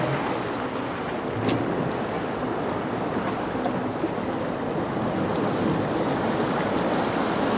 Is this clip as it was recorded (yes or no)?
yes